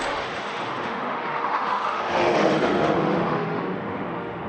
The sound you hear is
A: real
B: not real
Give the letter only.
B